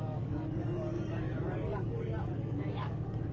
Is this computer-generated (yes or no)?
yes